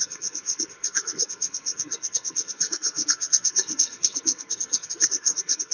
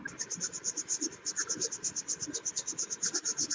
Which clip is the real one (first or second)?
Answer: second